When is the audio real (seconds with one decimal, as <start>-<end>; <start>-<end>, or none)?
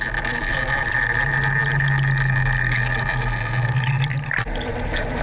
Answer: 0.0-5.2